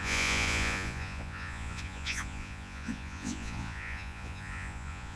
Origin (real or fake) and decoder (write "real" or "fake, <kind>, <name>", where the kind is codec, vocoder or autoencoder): fake, vocoder, Vocos